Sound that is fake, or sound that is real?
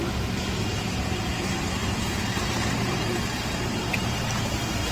fake